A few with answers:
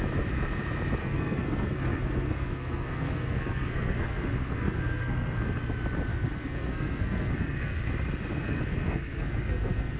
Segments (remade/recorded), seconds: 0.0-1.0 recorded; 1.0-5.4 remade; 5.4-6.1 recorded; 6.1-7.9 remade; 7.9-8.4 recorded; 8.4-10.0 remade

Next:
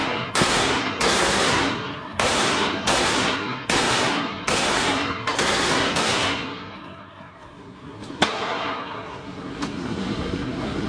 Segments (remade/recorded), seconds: 0.0-10.9 remade

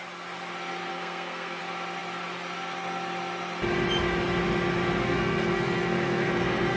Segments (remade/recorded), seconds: 0.0-0.9 recorded; 0.9-1.6 remade; 1.6-5.0 recorded; 5.0-6.8 remade

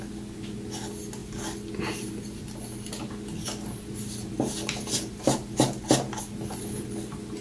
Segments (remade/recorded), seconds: 0.0-7.4 recorded

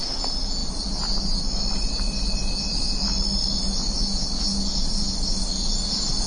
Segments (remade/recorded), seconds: 0.0-6.3 recorded